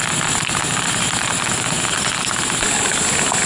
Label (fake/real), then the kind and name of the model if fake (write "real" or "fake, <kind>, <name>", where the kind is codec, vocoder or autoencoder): real